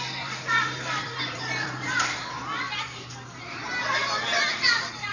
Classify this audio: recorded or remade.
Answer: remade